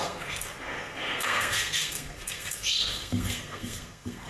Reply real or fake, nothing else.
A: fake